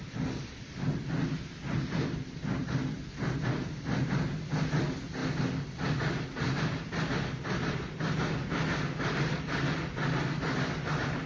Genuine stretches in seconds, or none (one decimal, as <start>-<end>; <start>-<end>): 0.0-11.3